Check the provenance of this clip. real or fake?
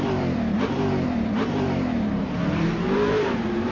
fake